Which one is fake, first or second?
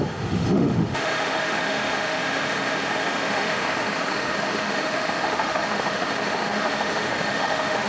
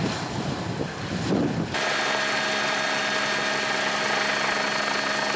first